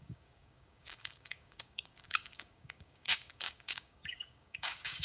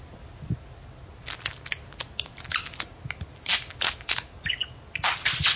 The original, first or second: second